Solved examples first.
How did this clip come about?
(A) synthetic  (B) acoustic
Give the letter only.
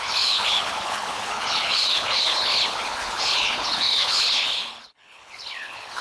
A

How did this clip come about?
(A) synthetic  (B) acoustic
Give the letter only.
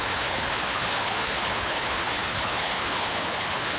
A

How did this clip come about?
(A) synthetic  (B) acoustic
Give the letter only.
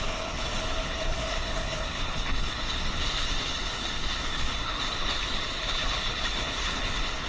A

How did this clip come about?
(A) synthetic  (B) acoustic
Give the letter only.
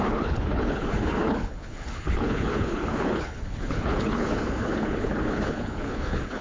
A